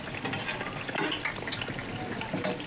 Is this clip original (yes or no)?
yes